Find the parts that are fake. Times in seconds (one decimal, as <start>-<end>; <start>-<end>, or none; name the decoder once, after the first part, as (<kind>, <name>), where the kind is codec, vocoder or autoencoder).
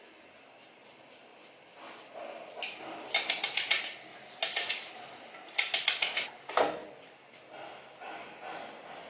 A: none